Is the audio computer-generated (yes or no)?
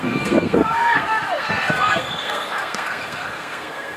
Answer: yes